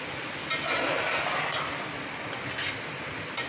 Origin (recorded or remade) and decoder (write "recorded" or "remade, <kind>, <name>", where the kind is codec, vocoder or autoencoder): recorded